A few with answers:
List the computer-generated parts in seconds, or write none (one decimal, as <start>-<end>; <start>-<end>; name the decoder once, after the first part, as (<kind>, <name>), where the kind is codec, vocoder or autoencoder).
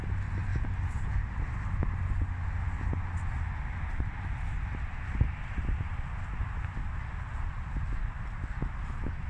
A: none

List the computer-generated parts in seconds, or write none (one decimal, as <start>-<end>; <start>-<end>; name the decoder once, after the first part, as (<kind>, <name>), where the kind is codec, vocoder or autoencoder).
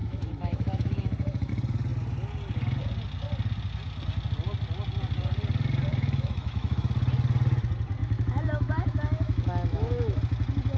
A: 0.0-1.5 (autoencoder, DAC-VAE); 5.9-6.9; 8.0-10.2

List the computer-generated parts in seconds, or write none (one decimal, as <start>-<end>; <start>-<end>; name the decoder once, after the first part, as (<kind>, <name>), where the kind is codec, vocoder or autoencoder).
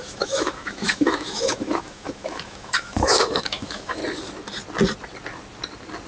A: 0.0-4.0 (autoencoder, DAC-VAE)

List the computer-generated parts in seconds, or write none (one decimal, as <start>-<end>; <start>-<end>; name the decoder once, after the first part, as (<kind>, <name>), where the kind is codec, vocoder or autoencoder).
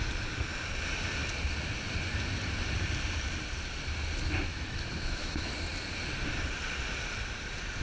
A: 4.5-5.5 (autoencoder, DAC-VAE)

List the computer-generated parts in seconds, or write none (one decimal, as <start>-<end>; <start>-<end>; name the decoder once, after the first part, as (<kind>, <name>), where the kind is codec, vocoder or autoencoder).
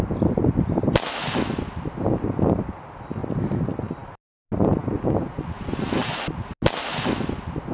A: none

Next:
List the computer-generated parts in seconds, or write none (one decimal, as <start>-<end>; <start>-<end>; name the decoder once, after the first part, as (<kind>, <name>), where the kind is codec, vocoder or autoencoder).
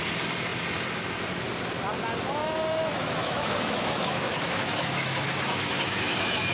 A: 2.4-6.5 (autoencoder, DAC-VAE)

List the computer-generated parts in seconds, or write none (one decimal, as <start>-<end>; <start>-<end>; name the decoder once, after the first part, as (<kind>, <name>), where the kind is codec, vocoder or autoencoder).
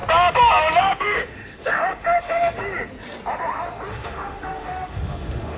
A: 0.8-2.6 (autoencoder, DAC-VAE); 3.9-5.6